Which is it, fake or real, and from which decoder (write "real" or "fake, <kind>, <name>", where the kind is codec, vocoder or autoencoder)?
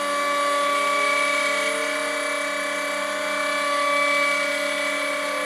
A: real